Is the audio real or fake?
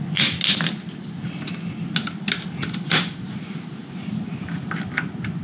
real